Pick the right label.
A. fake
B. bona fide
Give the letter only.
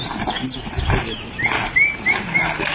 B